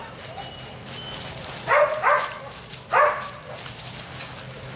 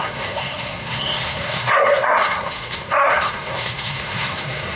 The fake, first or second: second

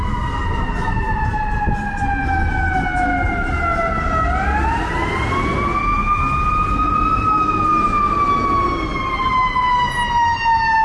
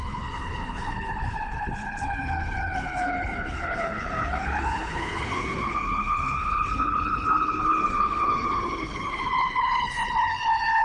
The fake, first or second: second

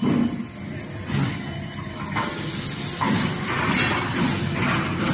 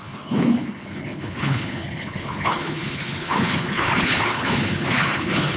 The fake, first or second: second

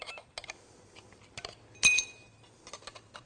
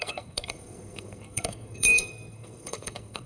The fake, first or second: second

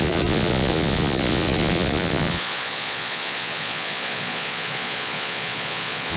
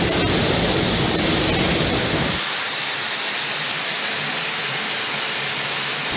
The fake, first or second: first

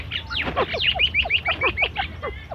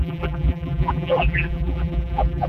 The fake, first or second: second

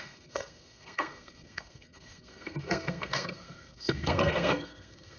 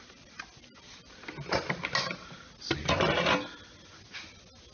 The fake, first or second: first